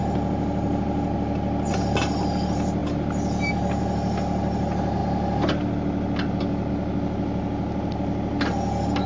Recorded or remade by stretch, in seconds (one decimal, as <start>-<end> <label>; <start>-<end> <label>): 0.0-9.1 recorded